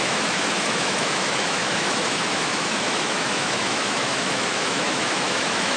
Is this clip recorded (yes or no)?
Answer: no